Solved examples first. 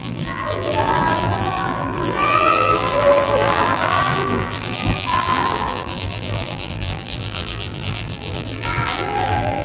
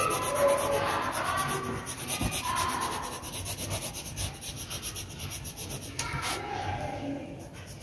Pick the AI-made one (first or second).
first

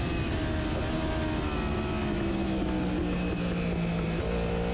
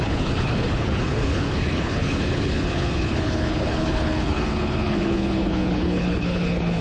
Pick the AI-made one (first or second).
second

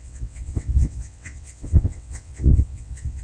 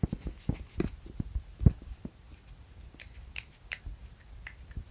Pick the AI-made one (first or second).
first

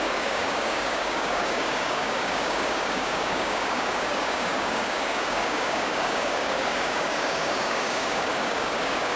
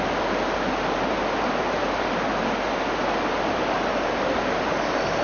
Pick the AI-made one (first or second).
first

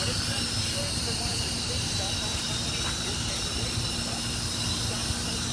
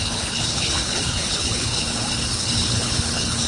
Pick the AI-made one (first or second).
second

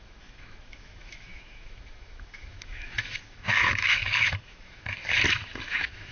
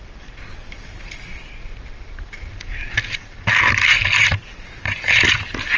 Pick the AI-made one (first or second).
first